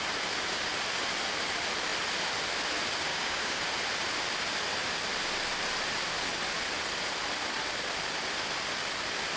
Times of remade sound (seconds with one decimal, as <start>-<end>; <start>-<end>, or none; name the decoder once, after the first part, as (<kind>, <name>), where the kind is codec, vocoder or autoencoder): 3.1-3.6 (codec, DAC)